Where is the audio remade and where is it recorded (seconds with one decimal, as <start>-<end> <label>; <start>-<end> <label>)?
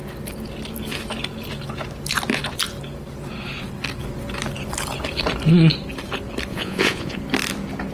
0.0-6.5 recorded; 6.5-7.2 remade; 7.2-7.9 recorded